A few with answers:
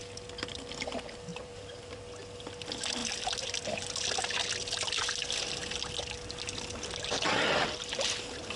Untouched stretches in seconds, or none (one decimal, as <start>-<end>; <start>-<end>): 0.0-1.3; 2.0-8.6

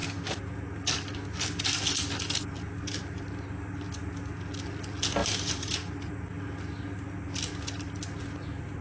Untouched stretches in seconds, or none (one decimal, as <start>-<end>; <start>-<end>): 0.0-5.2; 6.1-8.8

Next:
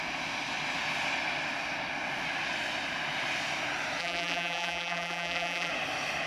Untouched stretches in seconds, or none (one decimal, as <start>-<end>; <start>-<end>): 0.0-4.0; 5.7-6.3

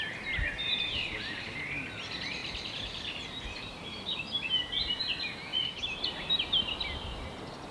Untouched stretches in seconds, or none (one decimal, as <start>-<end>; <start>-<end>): 0.0-0.6; 1.4-2.4; 5.0-7.7

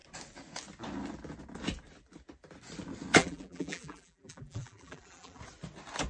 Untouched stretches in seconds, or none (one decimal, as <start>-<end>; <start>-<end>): 0.0-3.2; 5.4-6.1

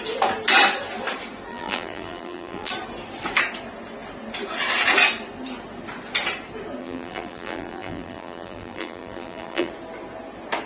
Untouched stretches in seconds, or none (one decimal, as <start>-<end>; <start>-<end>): 0.0-1.5; 2.7-6.8; 9.7-10.7

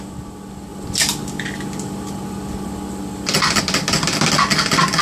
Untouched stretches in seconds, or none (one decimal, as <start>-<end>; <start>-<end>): 0.0-5.0